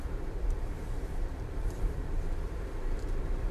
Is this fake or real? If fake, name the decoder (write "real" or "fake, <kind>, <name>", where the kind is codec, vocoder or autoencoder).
fake, vocoder, BigVGAN v2